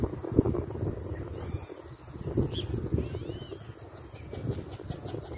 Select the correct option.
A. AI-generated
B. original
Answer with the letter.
B